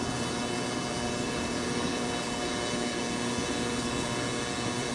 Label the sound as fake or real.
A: fake